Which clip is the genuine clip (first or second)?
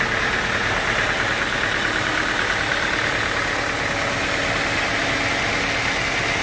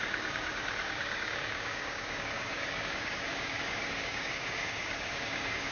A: first